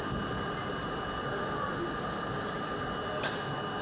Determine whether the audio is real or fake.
real